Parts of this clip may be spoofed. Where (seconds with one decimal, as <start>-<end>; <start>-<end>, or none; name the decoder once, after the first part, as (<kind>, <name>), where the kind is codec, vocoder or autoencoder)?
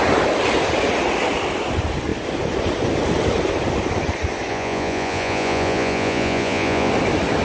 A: 4.5-6.9 (vocoder, Vocos)